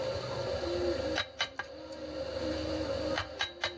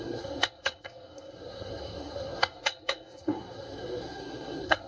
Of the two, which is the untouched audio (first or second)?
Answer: first